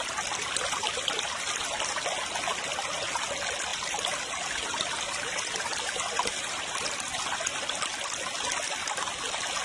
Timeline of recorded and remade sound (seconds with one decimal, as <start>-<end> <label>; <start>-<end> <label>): 0.0-3.7 recorded; 3.7-6.7 remade; 6.7-9.6 recorded